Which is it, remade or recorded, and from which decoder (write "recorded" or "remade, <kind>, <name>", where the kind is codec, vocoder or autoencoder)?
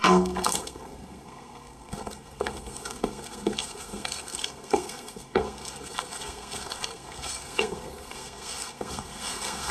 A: remade, codec, SNAC